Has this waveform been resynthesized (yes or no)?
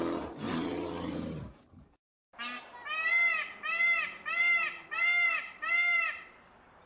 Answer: yes